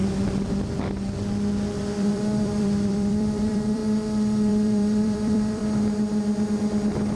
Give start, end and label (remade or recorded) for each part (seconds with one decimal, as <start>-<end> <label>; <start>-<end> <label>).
0.0-1.8 recorded; 1.8-3.8 remade; 3.8-4.5 recorded; 4.5-5.6 remade; 5.6-7.2 recorded